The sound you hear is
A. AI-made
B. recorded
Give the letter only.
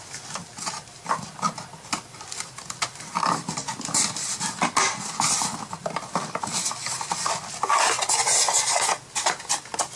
B